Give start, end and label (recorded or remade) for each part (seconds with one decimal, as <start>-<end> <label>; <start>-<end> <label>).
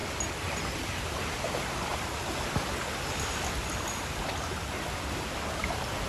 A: 0.0-6.1 recorded